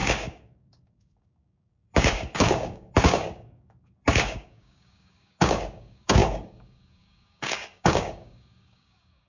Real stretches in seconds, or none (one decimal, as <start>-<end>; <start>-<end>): none